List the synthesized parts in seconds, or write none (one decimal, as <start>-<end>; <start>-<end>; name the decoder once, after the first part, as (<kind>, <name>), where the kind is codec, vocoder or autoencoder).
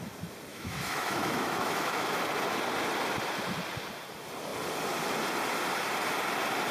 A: 0.5-2.2 (autoencoder, DAC-VAE)